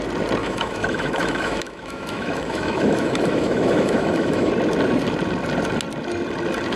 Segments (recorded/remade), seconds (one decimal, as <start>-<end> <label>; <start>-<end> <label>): 0.0-0.4 recorded; 0.4-4.5 remade; 4.5-6.8 recorded